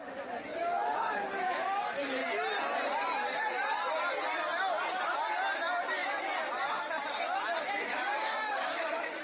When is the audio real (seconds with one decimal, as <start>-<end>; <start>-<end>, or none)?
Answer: 0.0-0.5; 1.8-7.9